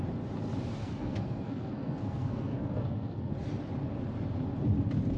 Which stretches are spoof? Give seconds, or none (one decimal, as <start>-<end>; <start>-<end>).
0.8-3.3

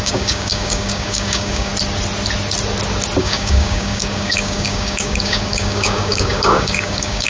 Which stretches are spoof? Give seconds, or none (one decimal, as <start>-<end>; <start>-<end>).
0.0-1.7; 3.2-7.3